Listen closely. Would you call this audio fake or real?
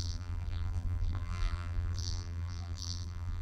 fake